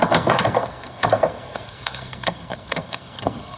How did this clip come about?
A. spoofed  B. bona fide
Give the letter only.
A